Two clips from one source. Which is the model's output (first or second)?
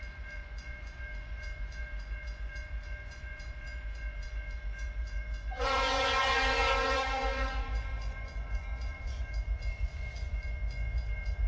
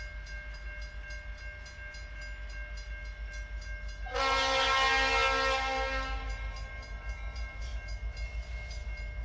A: first